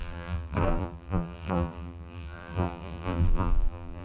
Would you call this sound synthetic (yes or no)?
yes